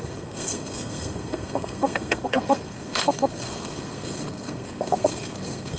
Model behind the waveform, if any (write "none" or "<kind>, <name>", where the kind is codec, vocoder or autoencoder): codec, SNAC